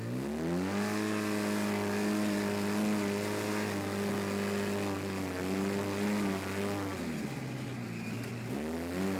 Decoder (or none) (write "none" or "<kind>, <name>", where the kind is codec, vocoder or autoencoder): none